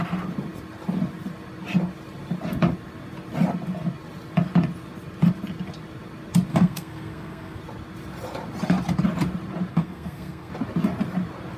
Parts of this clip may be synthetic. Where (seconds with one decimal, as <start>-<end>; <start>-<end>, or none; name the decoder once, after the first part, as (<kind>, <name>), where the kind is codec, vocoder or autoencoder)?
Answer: 6.5-7.6 (codec, SNAC); 9.7-10.5